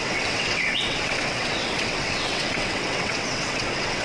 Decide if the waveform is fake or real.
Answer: fake